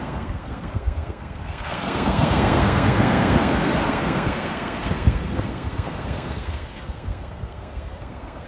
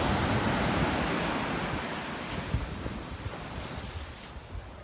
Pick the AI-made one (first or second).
first